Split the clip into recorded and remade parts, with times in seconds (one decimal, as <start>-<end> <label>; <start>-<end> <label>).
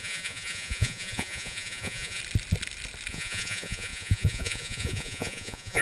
0.0-2.2 remade; 2.2-3.1 recorded; 3.1-5.8 remade